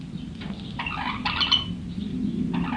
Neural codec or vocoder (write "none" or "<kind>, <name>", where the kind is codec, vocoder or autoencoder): none